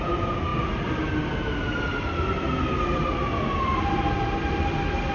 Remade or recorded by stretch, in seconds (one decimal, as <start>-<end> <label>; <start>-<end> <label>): 0.0-5.1 recorded